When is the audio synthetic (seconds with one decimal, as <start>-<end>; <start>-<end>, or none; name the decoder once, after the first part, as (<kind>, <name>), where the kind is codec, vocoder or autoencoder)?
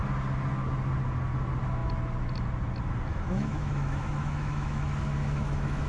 3.1-5.9 (autoencoder, DAC-VAE)